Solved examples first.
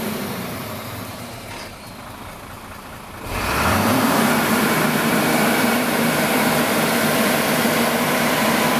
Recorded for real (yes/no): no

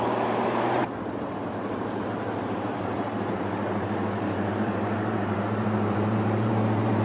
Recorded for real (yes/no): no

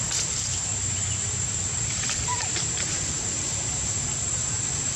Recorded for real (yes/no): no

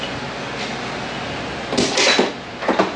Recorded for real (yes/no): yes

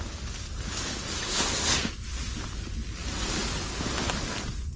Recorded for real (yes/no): yes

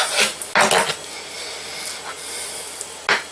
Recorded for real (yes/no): yes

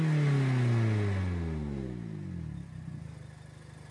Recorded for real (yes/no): yes